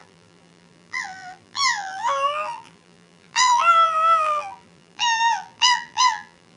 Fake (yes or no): yes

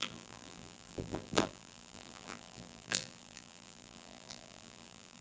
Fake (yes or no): yes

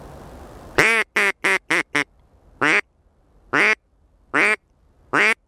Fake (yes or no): no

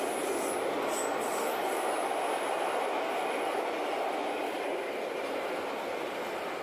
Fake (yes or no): no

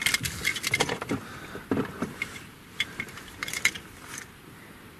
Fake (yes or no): yes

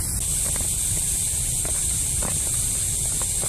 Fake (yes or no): no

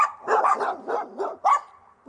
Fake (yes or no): yes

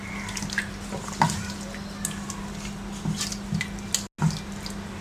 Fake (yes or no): no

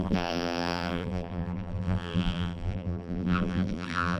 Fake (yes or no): yes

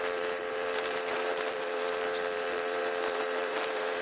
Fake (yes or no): yes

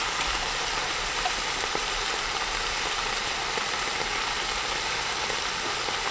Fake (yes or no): yes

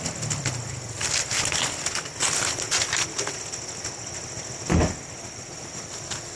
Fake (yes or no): no